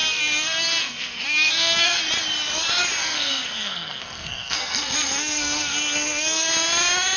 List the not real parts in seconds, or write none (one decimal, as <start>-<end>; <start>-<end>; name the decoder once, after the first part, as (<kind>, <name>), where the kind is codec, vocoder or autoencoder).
0.0-2.0 (codec, SNAC); 3.0-6.5